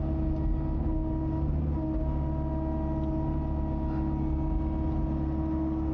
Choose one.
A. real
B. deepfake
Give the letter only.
A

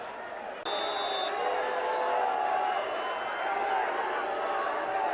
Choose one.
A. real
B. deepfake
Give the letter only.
A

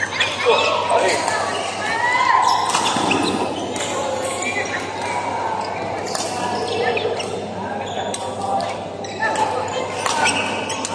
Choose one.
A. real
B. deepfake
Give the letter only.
A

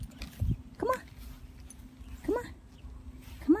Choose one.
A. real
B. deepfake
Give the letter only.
A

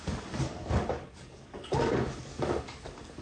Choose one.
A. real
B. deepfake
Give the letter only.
B